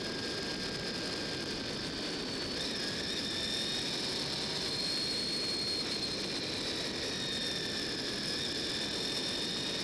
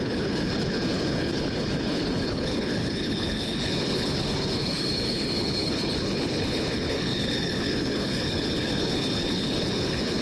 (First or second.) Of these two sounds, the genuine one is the first